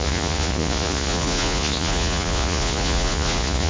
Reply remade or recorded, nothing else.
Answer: remade